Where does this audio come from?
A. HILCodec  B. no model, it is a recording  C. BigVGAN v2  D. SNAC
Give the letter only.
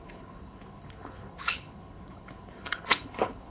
A